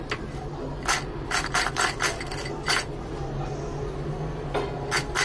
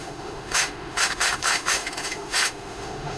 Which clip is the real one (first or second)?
first